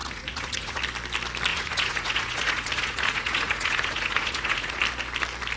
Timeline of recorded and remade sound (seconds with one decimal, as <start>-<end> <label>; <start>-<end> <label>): 0.0-0.8 remade; 0.8-1.5 recorded; 1.5-4.8 remade; 4.8-5.6 recorded